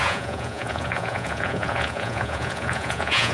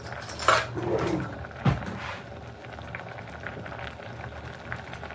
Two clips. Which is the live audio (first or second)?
second